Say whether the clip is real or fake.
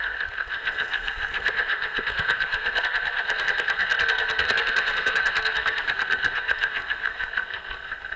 fake